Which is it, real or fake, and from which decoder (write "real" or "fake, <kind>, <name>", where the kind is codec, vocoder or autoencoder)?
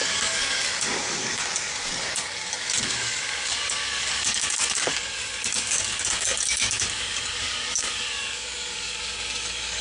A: fake, codec, DAC